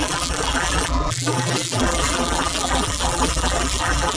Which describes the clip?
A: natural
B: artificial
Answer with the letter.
B